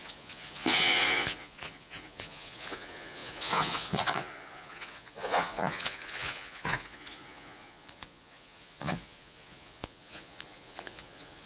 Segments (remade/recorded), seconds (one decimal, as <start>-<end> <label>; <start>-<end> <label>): 0.0-11.5 remade